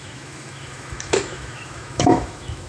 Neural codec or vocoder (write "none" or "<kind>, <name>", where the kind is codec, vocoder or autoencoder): autoencoder, DAC-VAE